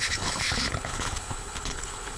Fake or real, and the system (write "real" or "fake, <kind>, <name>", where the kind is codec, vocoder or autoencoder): fake, codec, HILCodec